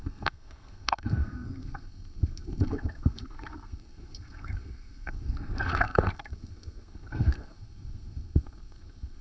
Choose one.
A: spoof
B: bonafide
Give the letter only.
A